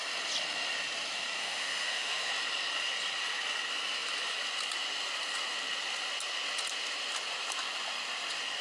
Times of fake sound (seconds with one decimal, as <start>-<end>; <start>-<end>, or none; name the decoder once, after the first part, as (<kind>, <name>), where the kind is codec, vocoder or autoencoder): 1.4-2.3 (autoencoder, DAC-VAE)

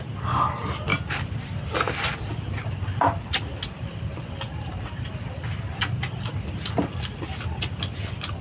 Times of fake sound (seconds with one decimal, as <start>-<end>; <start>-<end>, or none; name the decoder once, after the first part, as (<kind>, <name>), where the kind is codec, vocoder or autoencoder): none

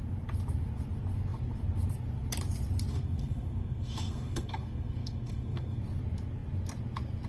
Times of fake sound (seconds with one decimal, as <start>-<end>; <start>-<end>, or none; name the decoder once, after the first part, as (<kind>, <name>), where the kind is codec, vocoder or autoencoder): 2.9-5.8 (codec, SNAC)

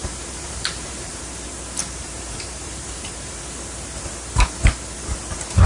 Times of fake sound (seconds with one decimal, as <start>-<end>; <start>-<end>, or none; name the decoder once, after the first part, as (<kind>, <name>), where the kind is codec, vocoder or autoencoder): 0.0-1.2 (vocoder, BigVGAN v2); 1.8-3.4

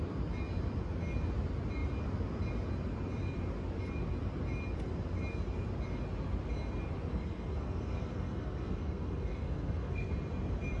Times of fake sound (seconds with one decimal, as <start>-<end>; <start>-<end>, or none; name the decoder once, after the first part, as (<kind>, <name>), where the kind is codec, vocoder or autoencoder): 7.1-10.1 (codec, SNAC)

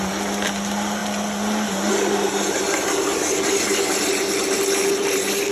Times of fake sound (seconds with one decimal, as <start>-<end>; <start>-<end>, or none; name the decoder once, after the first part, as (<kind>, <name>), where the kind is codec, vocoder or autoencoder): none

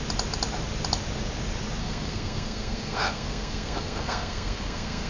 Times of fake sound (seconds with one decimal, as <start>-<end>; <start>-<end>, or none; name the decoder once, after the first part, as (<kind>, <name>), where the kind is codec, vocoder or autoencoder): 1.8-5.1 (codec, SNAC)